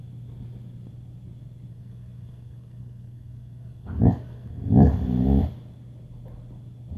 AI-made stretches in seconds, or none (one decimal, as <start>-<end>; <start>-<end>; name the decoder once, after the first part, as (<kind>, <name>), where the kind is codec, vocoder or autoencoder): 1.7-4.7 (codec, SNAC)